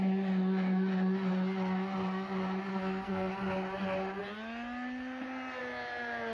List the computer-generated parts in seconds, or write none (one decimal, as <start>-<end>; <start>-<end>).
2.7-3.3

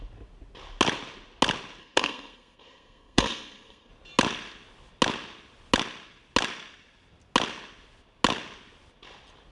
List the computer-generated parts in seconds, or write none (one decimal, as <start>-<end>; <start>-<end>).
1.8-3.9

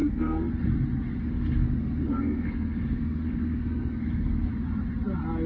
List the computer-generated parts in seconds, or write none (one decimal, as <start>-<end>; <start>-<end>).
0.0-0.6; 1.2-4.5

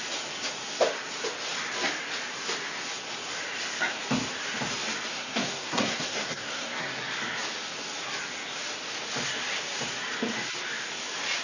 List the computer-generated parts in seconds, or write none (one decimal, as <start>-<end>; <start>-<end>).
5.1-6.9

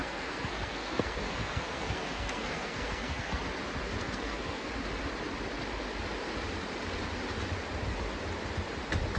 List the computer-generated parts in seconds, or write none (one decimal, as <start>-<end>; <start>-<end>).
0.0-3.4; 4.0-4.7

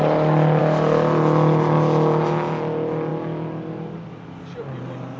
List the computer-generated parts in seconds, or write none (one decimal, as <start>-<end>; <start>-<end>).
none